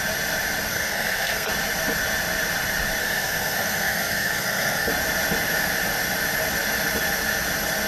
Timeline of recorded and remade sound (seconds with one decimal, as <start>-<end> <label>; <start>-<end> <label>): 0.0-0.7 recorded; 0.7-1.5 remade; 1.5-3.0 recorded; 3.0-4.9 remade; 4.9-7.9 recorded